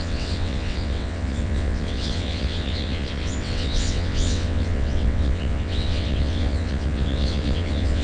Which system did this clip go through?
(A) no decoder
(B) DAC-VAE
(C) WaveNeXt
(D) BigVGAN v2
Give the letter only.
C